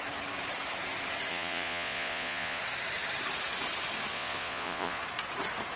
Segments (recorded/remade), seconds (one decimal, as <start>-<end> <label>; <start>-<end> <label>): 0.0-1.3 recorded; 1.3-2.6 remade; 2.6-4.1 recorded; 4.1-5.0 remade; 5.0-5.8 recorded